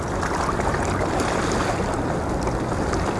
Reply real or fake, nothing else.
real